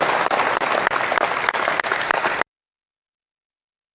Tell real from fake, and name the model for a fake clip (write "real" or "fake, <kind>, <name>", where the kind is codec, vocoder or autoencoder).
real